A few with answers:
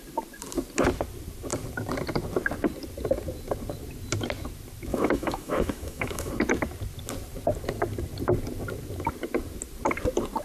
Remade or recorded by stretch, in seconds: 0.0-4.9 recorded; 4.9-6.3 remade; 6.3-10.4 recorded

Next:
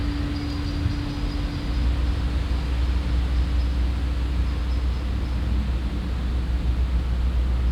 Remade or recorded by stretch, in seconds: 0.0-7.7 recorded

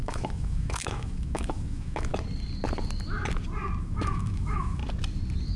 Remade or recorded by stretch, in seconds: 0.0-2.1 remade; 2.1-3.8 recorded; 3.8-4.8 remade; 4.8-5.6 recorded

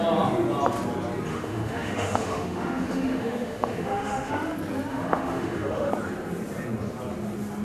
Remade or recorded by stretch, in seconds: 0.0-1.3 recorded; 1.3-4.3 remade; 4.3-4.9 recorded; 4.9-5.9 remade; 5.9-7.6 recorded

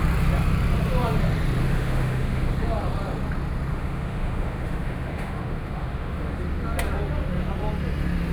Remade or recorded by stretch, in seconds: 0.0-1.6 recorded; 1.6-2.5 remade; 2.5-3.7 recorded; 3.7-6.3 remade; 6.3-8.3 recorded

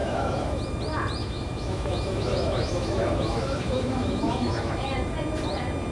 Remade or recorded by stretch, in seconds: 0.0-0.6 remade; 0.6-1.2 recorded; 1.2-4.7 remade; 4.7-5.9 recorded